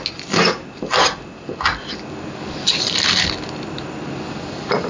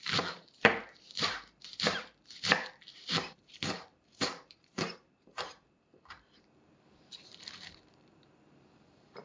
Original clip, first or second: first